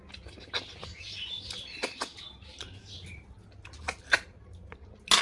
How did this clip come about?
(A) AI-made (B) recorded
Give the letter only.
B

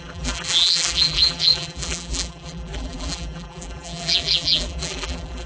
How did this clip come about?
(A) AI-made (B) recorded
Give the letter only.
A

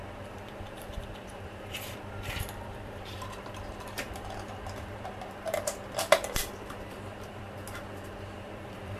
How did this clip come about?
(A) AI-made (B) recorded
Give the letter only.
A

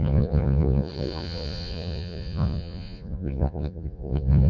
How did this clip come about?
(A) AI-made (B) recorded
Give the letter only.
A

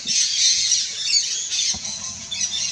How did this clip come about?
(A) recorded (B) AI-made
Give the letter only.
B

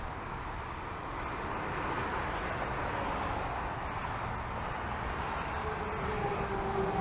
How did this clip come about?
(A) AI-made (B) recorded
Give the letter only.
B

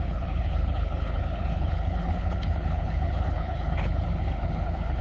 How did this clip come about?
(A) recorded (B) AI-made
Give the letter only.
B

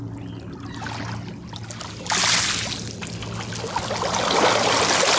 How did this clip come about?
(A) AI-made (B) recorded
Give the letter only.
B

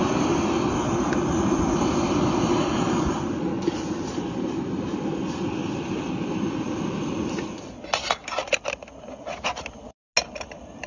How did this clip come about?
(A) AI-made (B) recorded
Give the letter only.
B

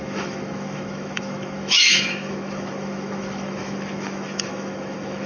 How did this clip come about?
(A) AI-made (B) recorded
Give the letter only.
A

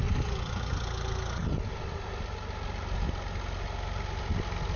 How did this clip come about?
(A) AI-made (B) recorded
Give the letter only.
B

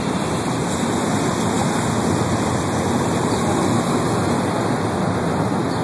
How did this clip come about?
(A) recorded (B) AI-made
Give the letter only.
A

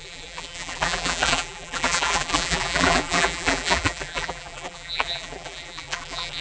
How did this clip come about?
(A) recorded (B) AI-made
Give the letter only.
B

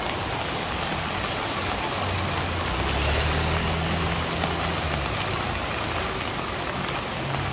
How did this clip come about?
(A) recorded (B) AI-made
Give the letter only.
A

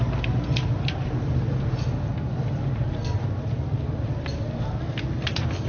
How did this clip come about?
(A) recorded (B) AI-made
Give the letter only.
A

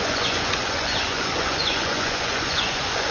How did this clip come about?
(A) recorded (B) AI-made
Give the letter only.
B